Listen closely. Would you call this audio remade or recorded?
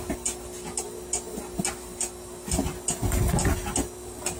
recorded